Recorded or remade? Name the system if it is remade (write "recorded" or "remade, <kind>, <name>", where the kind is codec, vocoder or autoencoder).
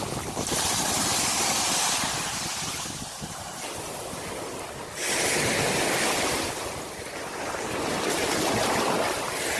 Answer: recorded